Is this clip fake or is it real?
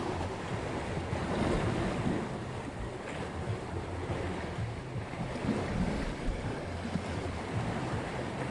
real